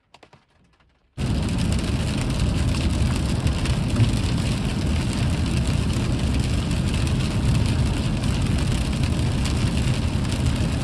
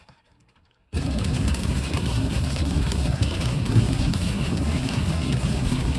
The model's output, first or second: second